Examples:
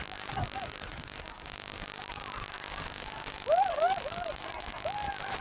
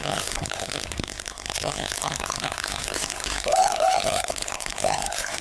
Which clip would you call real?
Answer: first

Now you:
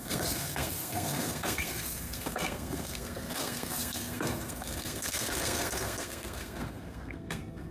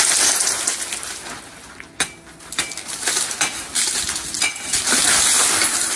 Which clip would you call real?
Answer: second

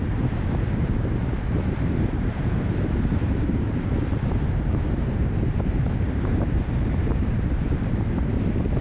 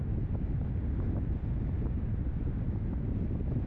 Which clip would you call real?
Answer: second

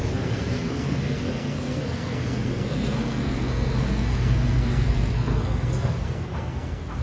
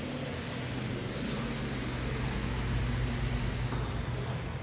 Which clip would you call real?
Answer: second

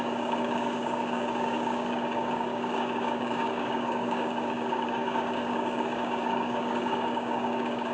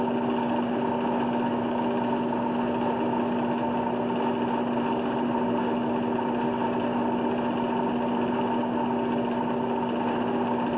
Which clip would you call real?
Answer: second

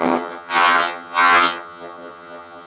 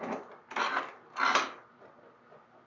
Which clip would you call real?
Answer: second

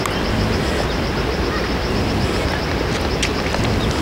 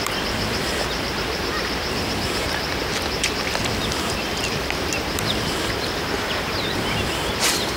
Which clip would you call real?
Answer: first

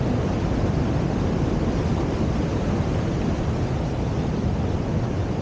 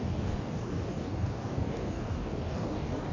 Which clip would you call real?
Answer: first